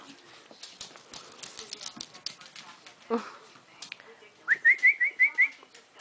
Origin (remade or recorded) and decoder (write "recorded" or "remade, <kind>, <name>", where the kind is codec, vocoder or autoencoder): recorded